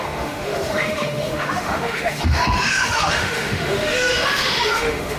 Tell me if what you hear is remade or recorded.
remade